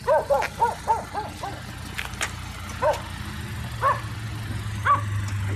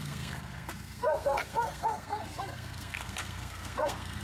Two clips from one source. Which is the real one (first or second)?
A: first